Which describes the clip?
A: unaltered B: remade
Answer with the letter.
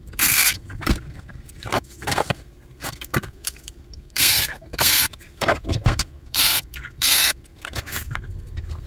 B